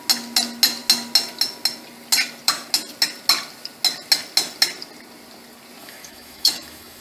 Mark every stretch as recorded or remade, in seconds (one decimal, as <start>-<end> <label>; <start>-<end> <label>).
0.0-5.8 recorded; 5.8-7.0 remade